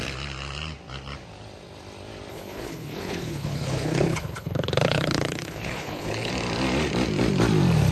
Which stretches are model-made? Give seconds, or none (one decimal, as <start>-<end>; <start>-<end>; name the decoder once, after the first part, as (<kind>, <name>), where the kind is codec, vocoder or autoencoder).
2.3-6.3 (codec, HILCodec)